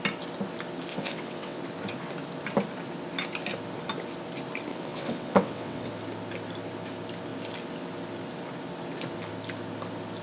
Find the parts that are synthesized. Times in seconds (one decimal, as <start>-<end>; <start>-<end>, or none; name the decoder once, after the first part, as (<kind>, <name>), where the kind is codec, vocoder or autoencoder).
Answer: 0.9-1.6 (vocoder, WaveNeXt); 4.7-5.9